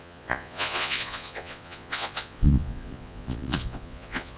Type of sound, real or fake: fake